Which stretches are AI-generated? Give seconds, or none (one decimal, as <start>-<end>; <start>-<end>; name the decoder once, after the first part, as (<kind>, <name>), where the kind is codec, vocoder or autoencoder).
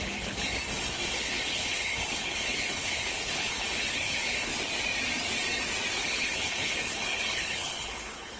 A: 0.0-0.6 (codec, HILCodec); 1.1-4.5; 6.0-8.4